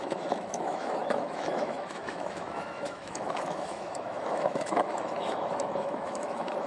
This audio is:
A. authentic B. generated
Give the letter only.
B